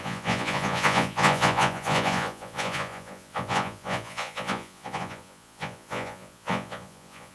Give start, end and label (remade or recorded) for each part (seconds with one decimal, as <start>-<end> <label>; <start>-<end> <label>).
0.0-7.3 remade